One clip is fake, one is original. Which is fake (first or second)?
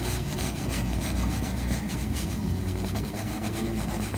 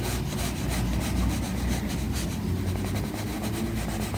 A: first